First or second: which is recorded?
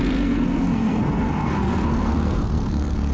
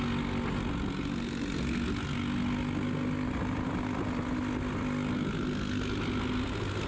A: second